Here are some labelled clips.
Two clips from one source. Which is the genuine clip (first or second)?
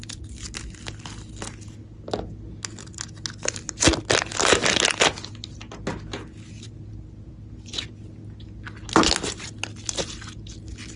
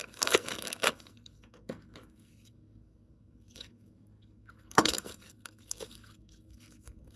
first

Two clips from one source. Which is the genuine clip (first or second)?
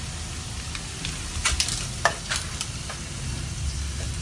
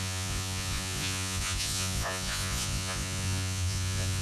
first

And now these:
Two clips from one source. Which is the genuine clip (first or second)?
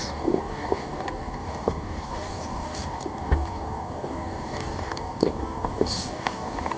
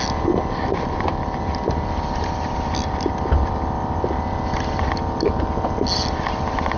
second